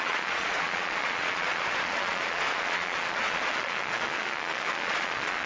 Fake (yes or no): yes